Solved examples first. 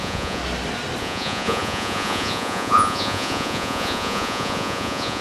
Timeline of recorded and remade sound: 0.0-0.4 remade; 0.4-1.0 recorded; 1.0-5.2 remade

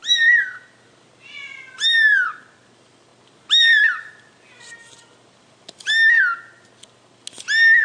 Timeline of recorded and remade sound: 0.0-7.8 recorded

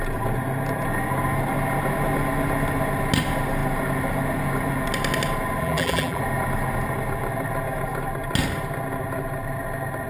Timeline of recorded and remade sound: 0.0-5.6 recorded; 5.6-6.2 remade; 6.2-10.1 recorded

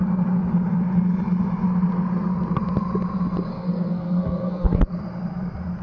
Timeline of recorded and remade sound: 0.0-3.5 recorded; 3.5-4.8 remade; 4.8-5.8 recorded